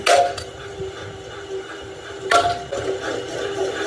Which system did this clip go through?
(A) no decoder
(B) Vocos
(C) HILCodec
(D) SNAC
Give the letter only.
A